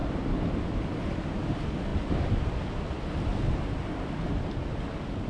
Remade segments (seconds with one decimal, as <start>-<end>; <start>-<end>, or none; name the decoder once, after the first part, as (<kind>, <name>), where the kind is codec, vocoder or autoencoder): none